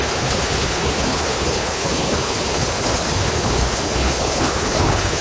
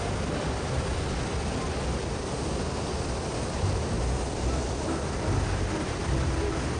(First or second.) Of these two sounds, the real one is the second